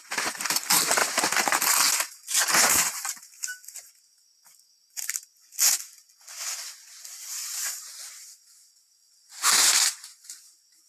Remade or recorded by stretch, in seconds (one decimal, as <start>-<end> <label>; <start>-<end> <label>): 0.0-10.9 recorded